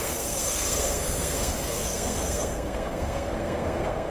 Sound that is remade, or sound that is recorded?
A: remade